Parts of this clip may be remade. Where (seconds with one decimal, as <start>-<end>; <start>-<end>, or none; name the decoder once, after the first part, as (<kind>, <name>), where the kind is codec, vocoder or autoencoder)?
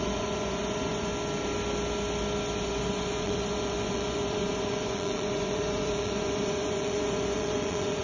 0.0-1.1 (vocoder, Vocos); 2.6-8.0